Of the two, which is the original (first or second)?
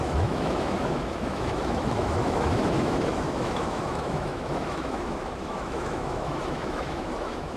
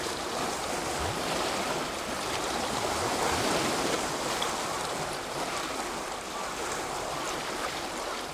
second